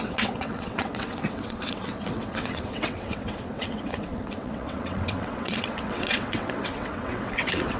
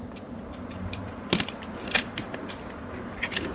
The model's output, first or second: first